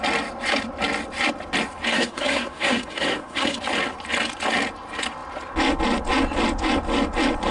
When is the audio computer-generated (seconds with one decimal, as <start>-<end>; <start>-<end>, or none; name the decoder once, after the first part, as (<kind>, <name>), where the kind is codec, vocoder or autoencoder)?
1.9-3.6 (codec, SNAC)